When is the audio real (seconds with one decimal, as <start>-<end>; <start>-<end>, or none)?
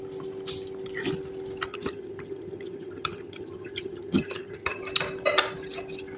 0.0-1.7; 4.8-6.2